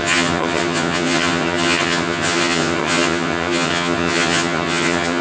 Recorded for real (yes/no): no